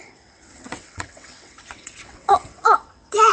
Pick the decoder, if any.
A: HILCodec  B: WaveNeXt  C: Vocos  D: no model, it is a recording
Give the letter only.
B